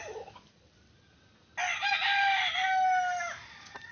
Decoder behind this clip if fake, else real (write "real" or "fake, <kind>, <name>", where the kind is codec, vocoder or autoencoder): real